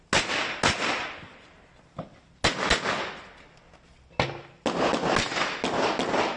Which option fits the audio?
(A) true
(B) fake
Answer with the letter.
A